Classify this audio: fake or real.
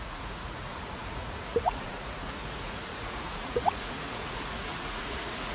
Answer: fake